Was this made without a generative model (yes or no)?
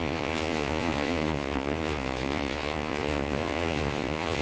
no